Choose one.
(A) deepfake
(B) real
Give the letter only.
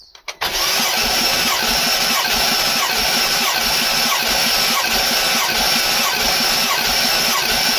B